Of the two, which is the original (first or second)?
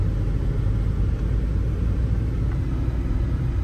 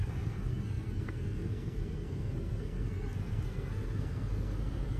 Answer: first